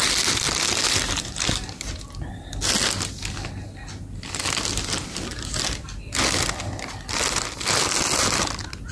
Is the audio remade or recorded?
recorded